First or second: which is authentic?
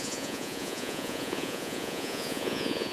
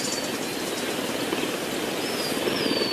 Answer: second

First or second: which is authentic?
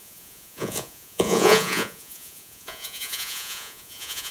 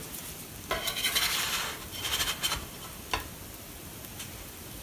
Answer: second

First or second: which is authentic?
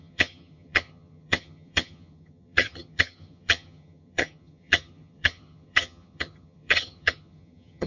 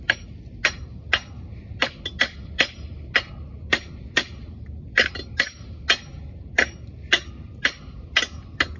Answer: second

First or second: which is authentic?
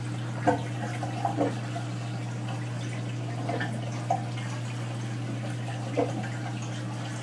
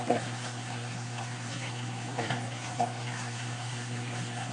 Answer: first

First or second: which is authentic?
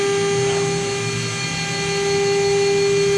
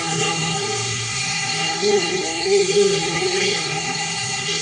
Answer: first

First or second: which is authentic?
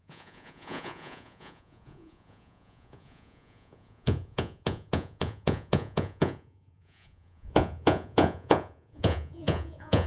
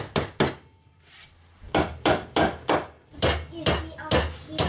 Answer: second